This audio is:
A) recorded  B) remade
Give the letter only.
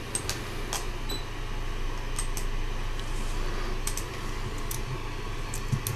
A